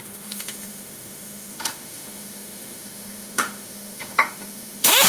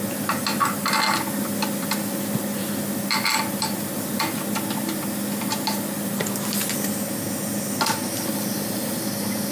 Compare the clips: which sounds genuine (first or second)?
second